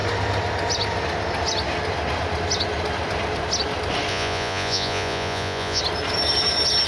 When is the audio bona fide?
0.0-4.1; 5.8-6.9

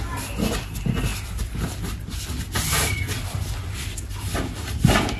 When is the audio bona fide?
0.0-5.2

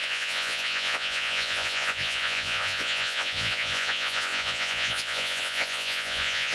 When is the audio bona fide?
none

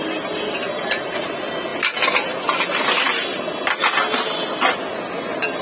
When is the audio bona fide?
0.0-5.6